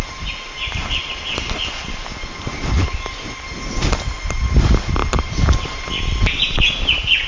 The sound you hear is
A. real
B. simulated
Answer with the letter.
A